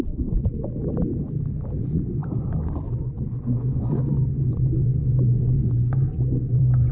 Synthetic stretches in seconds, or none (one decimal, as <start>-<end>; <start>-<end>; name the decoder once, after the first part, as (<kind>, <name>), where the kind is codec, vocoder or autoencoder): 0.0-0.5 (vocoder, Vocos); 1.8-6.9